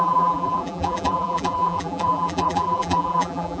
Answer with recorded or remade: remade